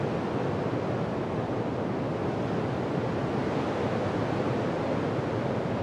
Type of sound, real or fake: real